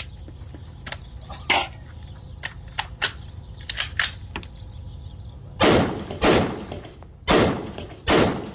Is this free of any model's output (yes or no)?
yes